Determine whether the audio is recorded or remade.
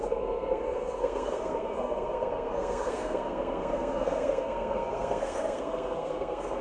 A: remade